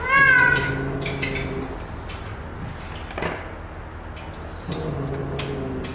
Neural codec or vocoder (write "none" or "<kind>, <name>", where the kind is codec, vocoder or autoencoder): none